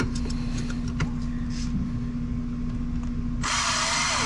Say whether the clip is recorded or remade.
recorded